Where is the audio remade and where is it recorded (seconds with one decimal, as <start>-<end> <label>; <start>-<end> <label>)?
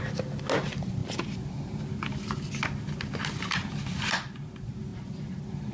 0.0-5.7 recorded